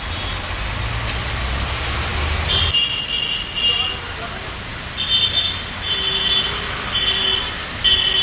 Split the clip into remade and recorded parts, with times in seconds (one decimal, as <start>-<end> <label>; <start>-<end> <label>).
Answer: 0.0-8.2 recorded